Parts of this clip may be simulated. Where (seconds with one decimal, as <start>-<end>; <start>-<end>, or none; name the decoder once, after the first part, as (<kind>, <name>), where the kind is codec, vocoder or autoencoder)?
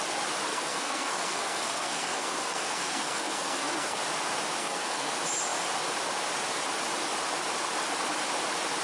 0.5-4.0 (codec, SNAC); 4.6-5.1